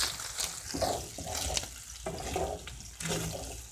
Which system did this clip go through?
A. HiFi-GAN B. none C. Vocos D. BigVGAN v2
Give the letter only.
B